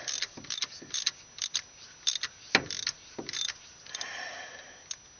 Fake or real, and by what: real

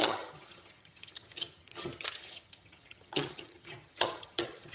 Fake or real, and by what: fake, vocoder, HiFi-GAN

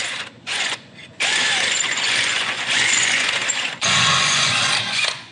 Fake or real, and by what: fake, vocoder, Vocos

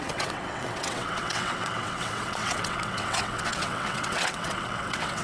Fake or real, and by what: fake, vocoder, WaveNeXt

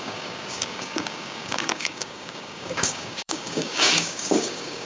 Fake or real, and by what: fake, codec, DAC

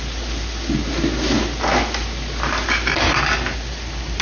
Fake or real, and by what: real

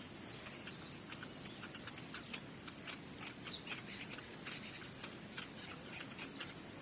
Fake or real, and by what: real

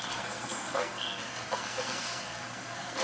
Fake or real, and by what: fake, codec, SNAC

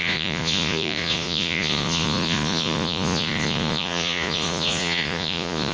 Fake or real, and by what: fake, vocoder, Vocos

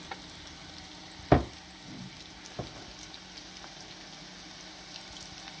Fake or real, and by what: real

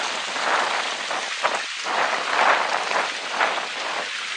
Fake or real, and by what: real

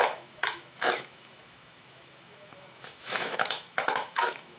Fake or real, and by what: fake, autoencoder, DAC-VAE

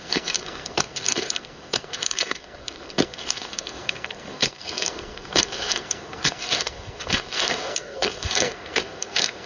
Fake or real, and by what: fake, codec, SNAC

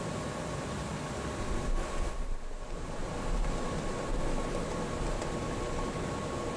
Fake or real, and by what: real